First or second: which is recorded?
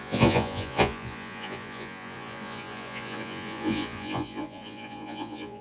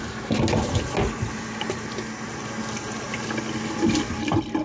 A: second